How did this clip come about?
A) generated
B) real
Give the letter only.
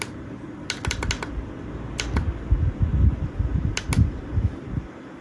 B